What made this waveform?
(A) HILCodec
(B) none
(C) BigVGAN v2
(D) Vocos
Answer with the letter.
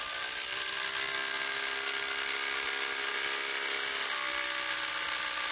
B